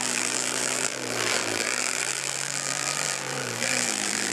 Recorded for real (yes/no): no